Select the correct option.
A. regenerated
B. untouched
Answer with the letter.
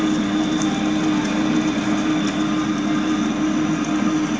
B